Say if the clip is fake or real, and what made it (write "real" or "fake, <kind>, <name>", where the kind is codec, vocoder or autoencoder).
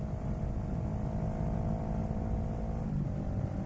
real